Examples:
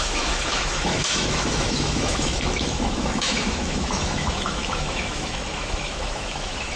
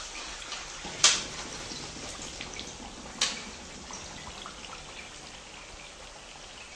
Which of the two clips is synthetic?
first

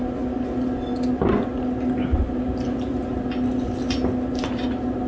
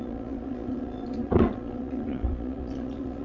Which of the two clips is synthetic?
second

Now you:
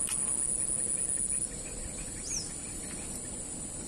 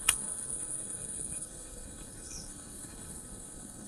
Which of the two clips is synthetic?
second